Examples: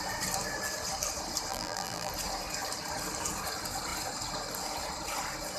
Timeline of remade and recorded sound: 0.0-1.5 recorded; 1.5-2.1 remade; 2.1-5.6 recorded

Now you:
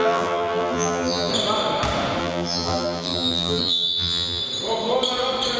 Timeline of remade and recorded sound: 0.0-1.3 remade; 1.3-2.2 recorded; 2.2-4.4 remade; 4.4-5.6 recorded

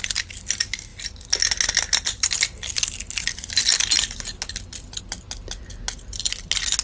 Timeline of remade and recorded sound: 0.0-6.8 recorded

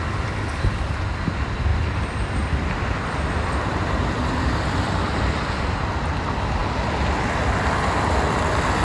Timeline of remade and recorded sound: 0.0-1.7 recorded; 1.7-5.5 remade; 5.5-8.8 recorded

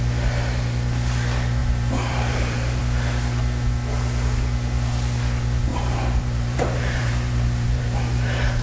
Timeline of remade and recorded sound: 0.0-1.6 recorded; 1.6-2.8 remade; 2.8-5.7 recorded; 5.7-8.0 remade; 8.0-8.6 recorded